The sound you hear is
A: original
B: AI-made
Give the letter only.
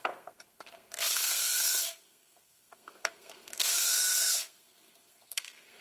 B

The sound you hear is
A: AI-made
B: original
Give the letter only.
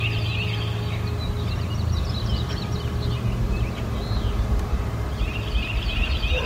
B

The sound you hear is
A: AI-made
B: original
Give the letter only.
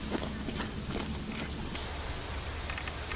B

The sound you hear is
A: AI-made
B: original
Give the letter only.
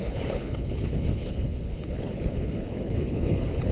A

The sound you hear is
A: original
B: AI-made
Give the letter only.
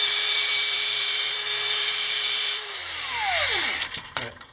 B